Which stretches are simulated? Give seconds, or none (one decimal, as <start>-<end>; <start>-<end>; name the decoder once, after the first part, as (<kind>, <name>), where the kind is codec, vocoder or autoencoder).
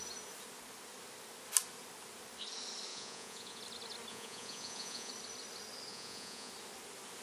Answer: 2.9-3.6 (vocoder, Vocos); 4.1-5.1; 5.9-6.5